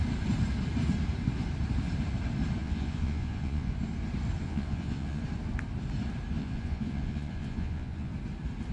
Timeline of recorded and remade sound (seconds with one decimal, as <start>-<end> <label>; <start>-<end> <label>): 0.0-2.6 recorded; 2.6-3.7 remade; 3.7-4.4 recorded; 4.4-5.2 remade; 5.2-6.4 recorded; 6.4-8.1 remade; 8.1-8.7 recorded